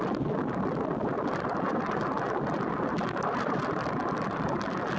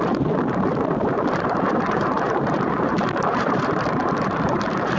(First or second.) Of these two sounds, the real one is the first